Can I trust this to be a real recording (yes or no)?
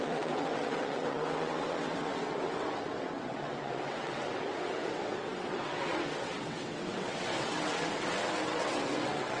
no